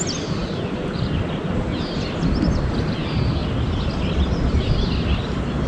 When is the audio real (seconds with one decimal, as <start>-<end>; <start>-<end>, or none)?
0.0-0.4; 2.8-3.4; 4.7-5.7